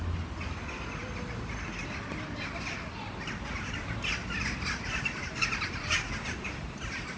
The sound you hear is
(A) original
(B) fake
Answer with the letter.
A